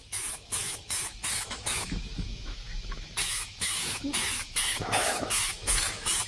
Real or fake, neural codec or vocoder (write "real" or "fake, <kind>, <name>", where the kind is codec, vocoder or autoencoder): fake, autoencoder, DAC-VAE